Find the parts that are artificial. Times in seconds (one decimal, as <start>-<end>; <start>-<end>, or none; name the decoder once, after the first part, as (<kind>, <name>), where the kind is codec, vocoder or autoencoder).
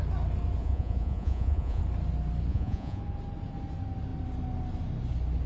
0.6-1.8 (vocoder, Vocos); 2.5-3.0